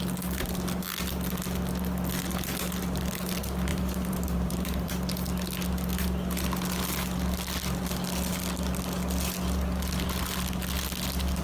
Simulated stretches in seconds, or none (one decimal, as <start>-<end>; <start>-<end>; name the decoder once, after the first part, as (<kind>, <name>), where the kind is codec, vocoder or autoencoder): 3.7-4.9 (vocoder, BigVGAN v2)